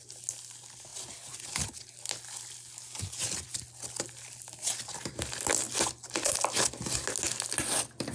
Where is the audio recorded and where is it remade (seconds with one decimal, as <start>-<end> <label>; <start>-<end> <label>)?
0.0-8.1 recorded